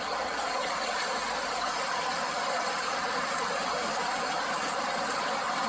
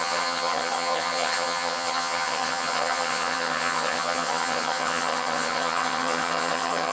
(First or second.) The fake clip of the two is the second